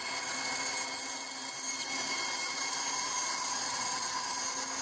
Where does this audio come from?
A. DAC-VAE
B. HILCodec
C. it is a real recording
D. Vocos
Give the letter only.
C